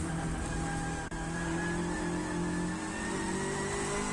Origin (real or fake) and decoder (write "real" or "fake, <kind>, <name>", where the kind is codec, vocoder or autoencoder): real